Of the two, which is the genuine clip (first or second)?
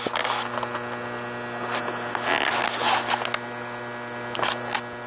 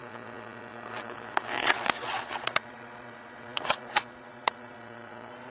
first